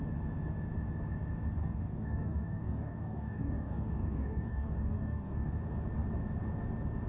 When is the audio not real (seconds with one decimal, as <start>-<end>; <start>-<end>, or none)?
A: 1.6-5.5